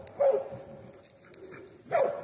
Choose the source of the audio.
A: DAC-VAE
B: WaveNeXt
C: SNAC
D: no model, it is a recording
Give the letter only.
D